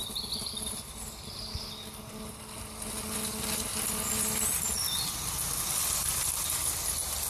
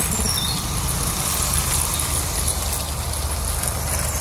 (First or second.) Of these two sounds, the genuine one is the first